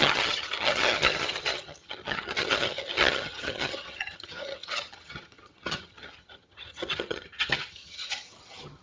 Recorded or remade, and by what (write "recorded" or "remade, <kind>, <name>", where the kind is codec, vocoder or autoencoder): remade, vocoder, HiFi-GAN